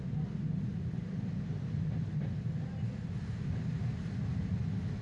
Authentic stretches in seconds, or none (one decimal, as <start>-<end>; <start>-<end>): 0.0-5.0